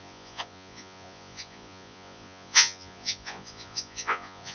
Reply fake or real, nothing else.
fake